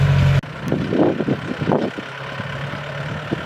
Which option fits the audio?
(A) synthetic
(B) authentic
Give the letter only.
B